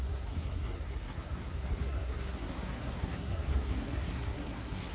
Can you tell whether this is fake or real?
fake